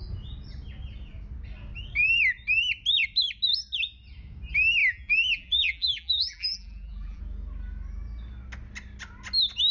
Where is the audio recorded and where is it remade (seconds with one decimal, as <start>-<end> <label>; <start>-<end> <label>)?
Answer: 0.0-4.8 recorded; 4.8-7.2 remade; 7.2-9.7 recorded

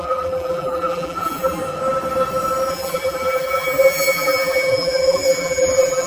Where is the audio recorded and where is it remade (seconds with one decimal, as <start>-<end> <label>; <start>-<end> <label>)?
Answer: 0.0-1.6 remade; 1.6-2.7 recorded; 2.7-6.1 remade

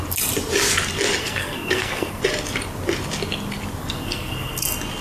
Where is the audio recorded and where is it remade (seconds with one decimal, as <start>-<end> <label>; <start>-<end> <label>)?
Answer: 0.0-1.2 recorded; 1.2-2.2 remade; 2.2-3.8 recorded; 3.8-4.6 remade; 4.6-5.0 recorded

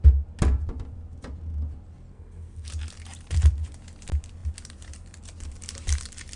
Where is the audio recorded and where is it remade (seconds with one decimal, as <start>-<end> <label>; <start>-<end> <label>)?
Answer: 0.0-2.1 recorded; 2.1-2.7 remade; 2.7-6.4 recorded

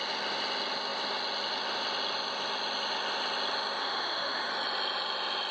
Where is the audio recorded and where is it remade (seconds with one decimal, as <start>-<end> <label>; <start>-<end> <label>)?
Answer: 0.0-3.8 recorded; 3.8-4.5 remade; 4.5-5.5 recorded